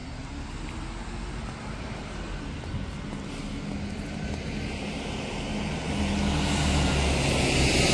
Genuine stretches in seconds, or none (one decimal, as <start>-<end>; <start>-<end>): 0.0-7.9